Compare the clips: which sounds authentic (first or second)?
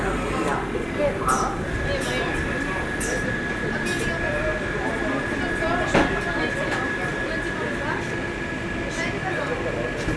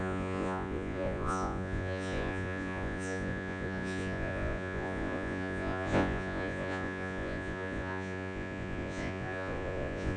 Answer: first